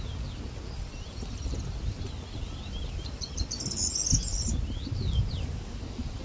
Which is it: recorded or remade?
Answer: recorded